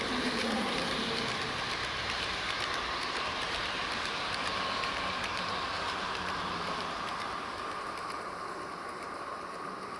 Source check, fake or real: fake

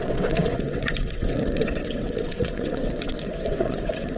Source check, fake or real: fake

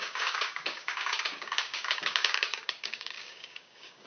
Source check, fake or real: fake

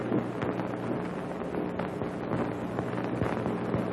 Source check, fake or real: real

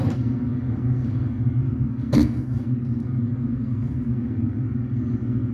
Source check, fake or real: fake